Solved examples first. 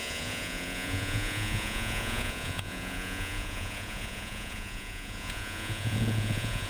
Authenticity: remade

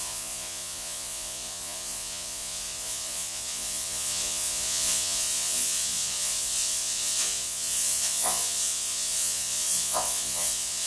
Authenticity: remade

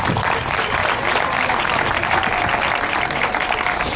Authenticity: recorded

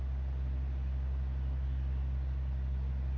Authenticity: recorded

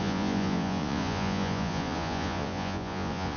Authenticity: remade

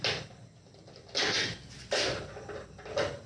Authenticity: recorded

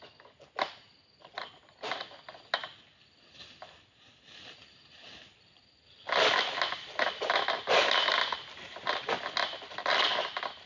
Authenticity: recorded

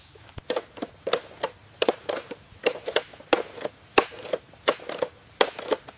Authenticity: recorded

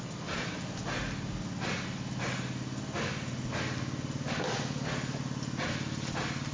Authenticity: recorded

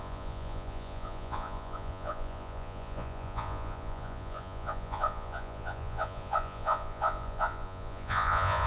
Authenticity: remade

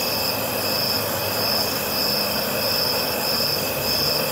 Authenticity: recorded